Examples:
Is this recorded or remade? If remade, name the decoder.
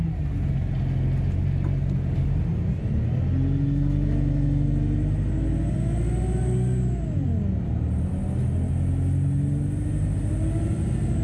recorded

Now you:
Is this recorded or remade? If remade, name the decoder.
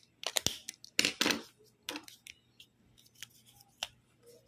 recorded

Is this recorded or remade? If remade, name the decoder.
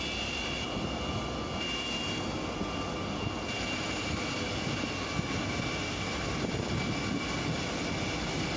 recorded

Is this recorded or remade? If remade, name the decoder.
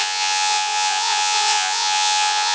remade, vocoder, Vocos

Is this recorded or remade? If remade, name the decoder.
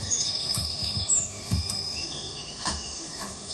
remade, autoencoder, DAC-VAE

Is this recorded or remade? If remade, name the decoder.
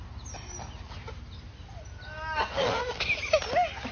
recorded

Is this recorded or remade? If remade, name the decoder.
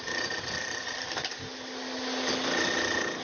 recorded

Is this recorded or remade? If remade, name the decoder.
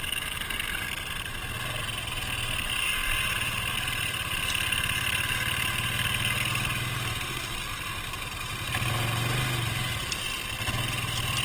recorded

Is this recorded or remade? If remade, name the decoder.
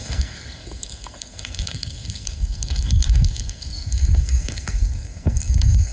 remade, codec, SNAC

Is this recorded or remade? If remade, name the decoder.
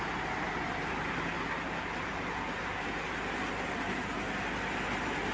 recorded